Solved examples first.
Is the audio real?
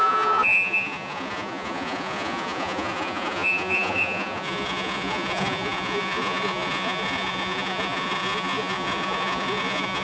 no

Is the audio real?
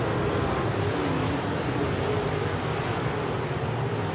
yes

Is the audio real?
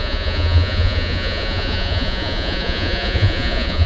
no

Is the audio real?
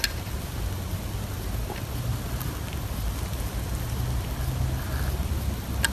yes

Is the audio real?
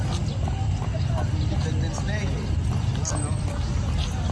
yes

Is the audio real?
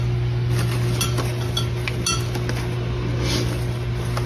yes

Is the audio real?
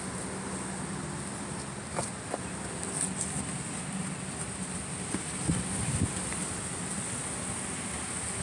yes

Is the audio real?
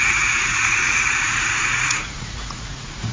no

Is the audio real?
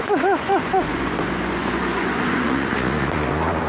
no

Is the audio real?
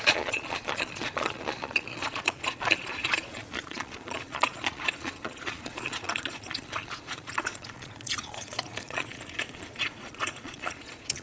no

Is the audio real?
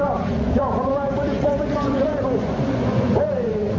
no